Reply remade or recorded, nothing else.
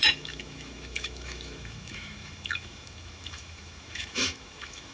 remade